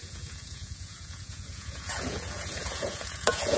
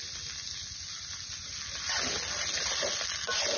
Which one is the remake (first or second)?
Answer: first